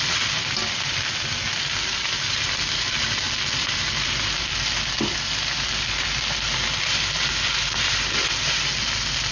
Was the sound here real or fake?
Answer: real